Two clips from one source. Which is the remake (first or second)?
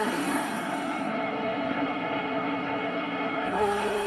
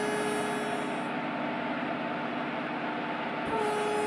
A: first